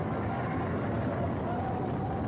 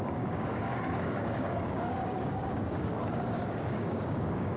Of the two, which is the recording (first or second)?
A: first